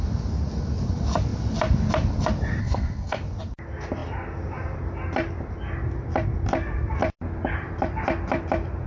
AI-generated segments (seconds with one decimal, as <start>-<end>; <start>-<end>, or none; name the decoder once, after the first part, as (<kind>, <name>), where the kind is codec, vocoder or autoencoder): 2.6-3.2 (codec, SNAC)